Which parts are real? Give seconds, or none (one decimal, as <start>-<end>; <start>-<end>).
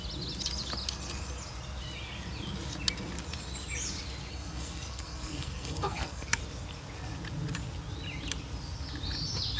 0.0-4.3; 6.4-9.6